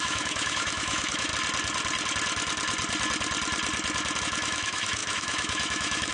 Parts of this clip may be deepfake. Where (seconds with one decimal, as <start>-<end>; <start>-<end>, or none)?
0.0-1.3; 4.2-6.1